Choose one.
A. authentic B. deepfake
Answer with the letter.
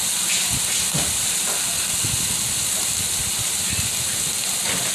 A